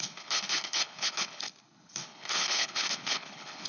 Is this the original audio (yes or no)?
no